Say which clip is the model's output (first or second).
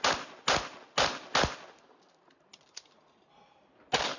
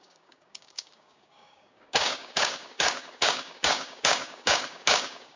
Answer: second